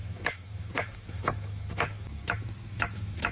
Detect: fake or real fake